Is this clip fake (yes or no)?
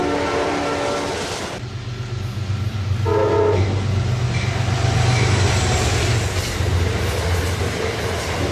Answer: no